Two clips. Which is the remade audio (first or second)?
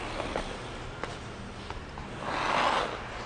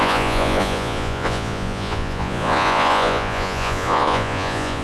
second